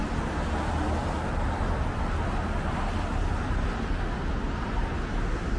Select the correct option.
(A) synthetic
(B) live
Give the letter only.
B